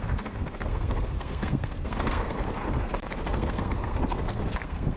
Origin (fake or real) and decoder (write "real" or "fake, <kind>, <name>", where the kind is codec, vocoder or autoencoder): fake, codec, SNAC